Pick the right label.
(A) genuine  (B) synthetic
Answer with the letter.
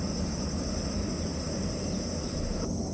A